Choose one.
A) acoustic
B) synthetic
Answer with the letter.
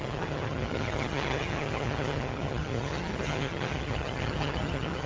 B